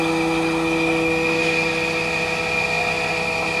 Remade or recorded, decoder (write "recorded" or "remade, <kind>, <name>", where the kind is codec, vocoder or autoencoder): recorded